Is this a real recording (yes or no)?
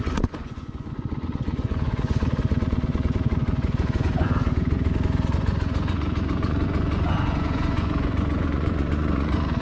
no